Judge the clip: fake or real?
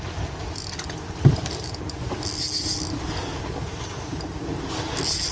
real